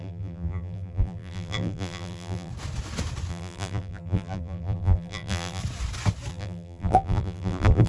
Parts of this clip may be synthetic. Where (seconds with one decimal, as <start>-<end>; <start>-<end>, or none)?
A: 0.0-2.5; 3.3-5.6; 6.3-7.9